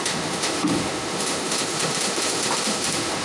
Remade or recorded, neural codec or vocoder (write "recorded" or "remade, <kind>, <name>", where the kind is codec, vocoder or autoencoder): remade, autoencoder, DAC-VAE